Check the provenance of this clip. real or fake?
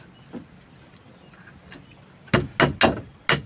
real